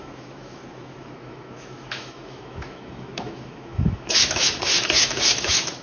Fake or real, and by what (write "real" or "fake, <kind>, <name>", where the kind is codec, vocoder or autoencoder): fake, autoencoder, DAC-VAE